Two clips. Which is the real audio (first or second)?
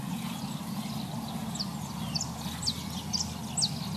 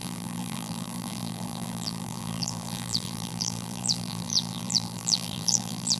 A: first